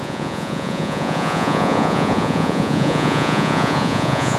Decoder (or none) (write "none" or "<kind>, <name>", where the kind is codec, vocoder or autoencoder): vocoder, Vocos